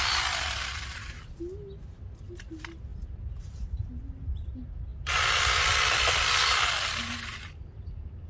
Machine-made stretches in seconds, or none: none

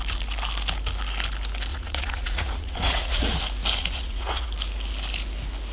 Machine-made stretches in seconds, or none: 1.7-3.4 (vocoder, Vocos); 3.8-4.5